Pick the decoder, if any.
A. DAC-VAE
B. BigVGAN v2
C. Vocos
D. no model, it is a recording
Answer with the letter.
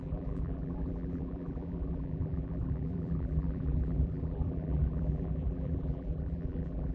B